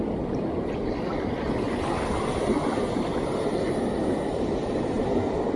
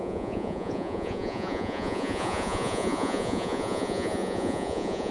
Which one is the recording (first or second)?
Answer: first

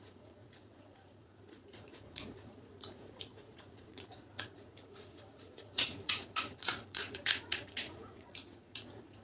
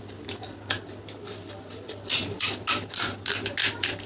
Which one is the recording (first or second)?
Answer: second